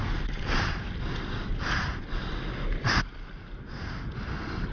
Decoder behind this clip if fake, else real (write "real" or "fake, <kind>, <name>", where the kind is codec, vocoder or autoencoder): real